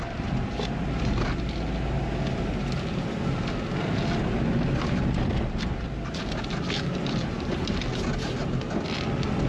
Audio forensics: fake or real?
real